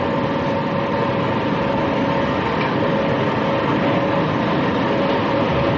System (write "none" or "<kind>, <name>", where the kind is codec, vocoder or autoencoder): none